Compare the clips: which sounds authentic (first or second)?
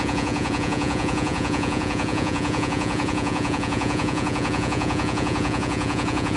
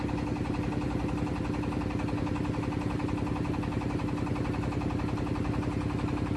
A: second